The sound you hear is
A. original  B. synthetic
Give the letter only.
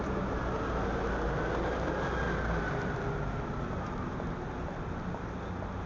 A